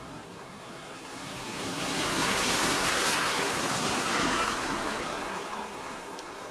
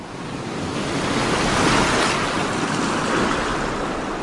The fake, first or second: first